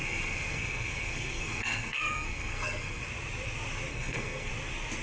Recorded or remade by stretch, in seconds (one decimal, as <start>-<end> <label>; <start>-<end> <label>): 0.0-3.0 remade; 3.0-3.9 recorded; 3.9-4.5 remade; 4.5-5.0 recorded